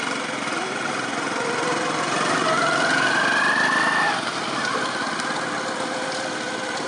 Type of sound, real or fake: real